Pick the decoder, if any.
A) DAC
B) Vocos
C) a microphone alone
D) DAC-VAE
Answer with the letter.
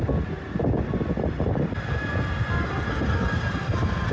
C